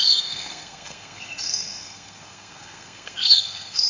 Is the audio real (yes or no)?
no